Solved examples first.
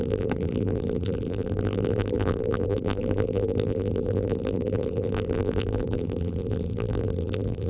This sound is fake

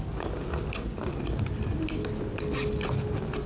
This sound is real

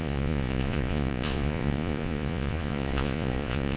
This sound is fake